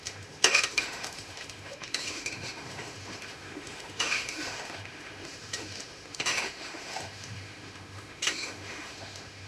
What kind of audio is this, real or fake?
fake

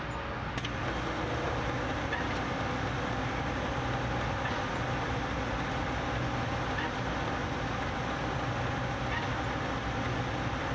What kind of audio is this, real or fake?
real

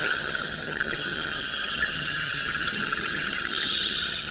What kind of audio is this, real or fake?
fake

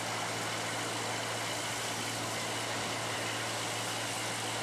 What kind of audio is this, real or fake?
real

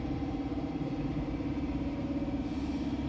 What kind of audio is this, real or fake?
fake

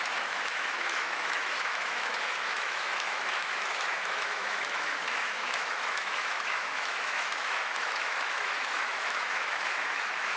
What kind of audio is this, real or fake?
fake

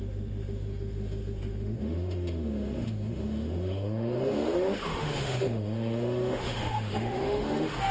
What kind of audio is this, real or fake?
fake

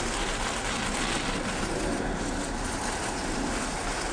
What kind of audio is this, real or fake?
real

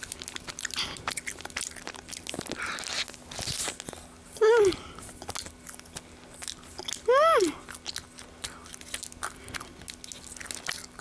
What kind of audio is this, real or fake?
real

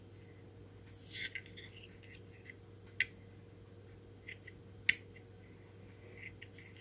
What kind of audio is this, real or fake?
real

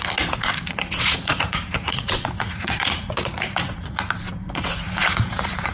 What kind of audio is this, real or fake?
fake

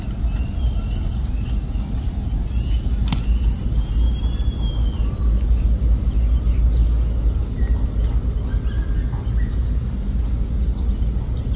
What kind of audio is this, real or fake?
real